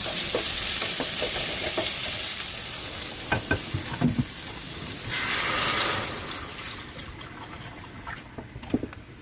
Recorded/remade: recorded